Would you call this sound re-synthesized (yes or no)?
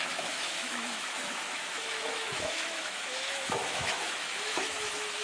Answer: yes